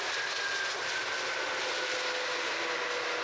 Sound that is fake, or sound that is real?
real